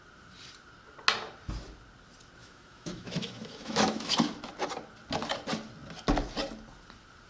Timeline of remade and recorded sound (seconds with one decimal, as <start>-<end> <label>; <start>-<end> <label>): 0.0-2.4 recorded; 2.4-4.1 remade; 4.1-7.3 recorded